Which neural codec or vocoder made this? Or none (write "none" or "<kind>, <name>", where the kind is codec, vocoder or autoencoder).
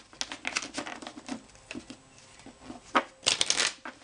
none